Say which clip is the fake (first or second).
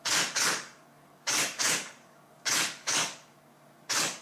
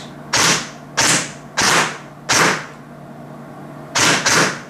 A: first